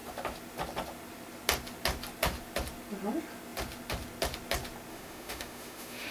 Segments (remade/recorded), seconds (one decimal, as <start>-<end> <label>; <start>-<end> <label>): 0.0-4.9 recorded; 4.9-6.1 remade